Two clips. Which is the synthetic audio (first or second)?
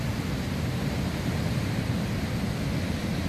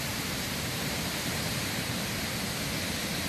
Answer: second